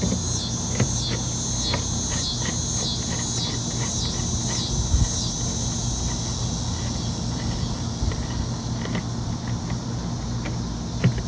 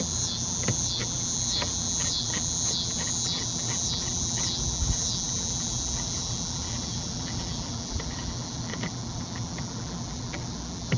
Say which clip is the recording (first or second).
first